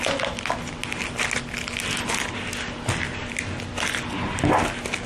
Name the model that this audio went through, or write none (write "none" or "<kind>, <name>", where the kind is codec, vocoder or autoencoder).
none